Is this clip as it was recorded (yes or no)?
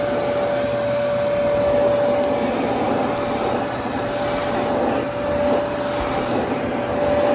yes